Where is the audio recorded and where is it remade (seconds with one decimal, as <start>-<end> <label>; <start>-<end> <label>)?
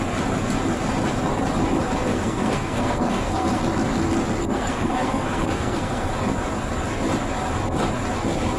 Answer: 0.0-2.1 recorded; 2.1-3.6 remade; 3.6-4.4 recorded; 4.4-6.1 remade; 6.1-8.6 recorded